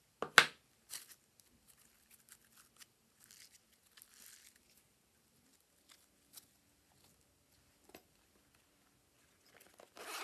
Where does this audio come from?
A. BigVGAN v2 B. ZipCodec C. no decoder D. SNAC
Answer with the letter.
C